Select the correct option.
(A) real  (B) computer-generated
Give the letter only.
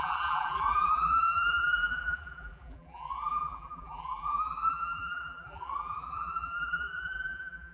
B